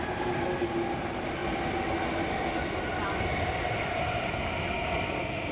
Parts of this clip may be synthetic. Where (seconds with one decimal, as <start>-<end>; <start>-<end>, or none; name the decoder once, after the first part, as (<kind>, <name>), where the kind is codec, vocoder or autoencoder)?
none